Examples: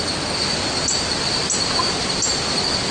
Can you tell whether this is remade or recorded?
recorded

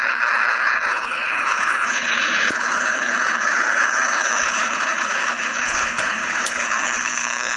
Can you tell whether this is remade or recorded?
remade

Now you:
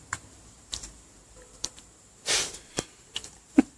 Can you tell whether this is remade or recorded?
remade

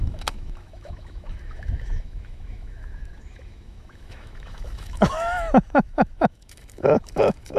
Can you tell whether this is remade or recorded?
remade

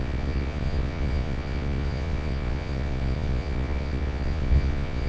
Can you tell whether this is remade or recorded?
remade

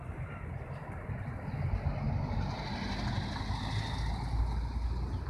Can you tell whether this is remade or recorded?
recorded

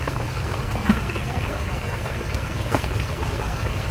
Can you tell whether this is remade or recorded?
remade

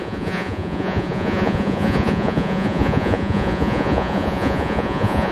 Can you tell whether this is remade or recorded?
remade